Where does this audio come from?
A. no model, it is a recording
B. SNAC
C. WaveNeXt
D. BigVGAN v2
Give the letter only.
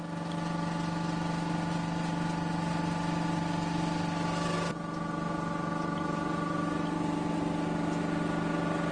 A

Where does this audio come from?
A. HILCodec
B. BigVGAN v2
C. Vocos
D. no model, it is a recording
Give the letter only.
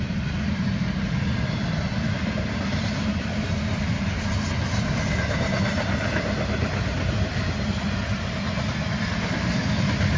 D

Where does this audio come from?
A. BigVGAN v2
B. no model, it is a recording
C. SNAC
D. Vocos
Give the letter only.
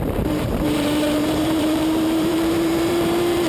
A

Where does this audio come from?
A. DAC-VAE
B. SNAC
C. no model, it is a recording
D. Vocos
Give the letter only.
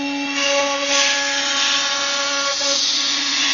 D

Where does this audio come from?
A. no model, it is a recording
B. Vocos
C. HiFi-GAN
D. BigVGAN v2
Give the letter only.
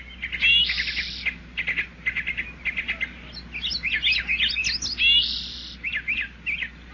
A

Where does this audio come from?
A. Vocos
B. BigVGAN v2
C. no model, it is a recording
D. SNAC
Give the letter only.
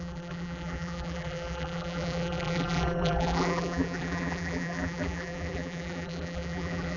B